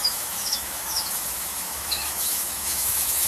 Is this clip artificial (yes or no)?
yes